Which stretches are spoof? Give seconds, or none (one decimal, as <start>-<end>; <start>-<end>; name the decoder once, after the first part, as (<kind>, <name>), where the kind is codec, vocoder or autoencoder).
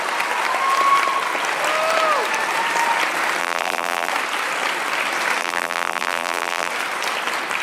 3.4-4.1 (vocoder, BigVGAN v2); 5.4-6.7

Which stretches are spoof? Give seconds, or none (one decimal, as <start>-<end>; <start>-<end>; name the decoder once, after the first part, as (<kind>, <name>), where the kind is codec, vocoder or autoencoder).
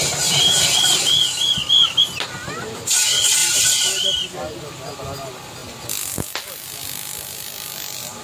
none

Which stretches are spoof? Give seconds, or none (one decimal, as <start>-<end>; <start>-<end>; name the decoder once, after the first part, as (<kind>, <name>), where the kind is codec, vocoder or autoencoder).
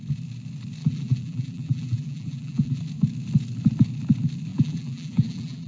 0.8-2.8 (vocoder, BigVGAN v2); 4.5-5.7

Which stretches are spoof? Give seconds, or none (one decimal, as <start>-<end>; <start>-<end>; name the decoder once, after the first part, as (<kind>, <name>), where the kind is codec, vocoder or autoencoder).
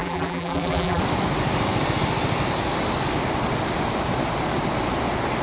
0.0-1.0 (vocoder, BigVGAN v2)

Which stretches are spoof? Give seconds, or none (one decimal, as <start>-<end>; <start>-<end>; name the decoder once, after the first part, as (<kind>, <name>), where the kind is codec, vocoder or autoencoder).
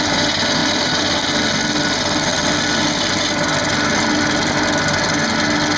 none